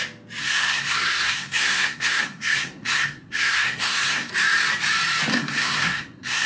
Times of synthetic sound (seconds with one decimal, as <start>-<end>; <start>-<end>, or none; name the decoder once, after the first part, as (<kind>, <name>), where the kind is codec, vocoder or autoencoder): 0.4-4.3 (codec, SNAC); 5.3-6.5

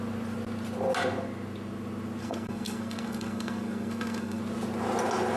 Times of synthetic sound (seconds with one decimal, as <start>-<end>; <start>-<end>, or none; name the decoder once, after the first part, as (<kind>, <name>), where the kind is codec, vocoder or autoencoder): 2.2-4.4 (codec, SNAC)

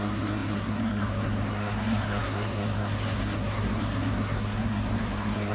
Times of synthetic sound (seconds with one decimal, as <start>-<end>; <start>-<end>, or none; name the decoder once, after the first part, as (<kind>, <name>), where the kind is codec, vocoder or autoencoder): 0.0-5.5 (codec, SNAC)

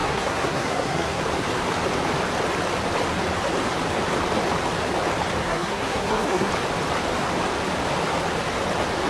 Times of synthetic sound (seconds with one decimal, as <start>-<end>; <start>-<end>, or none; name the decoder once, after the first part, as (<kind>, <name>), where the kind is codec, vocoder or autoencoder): 0.0-1.2 (codec, SNAC); 5.4-6.5

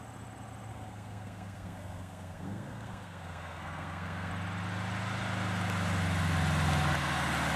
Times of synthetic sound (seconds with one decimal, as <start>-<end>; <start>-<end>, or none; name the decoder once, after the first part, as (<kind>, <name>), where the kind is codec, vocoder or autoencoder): 0.7-4.3 (codec, SNAC)

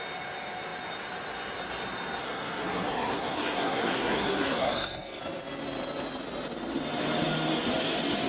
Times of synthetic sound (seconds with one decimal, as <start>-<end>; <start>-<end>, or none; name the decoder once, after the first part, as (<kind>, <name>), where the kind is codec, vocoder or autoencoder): 2.2-5.2 (codec, SNAC)